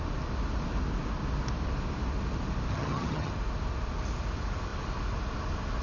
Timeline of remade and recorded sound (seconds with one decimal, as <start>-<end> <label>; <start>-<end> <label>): 0.0-2.7 recorded; 2.7-3.3 remade; 3.3-5.8 recorded